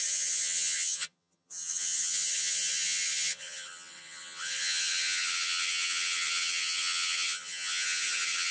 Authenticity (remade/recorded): remade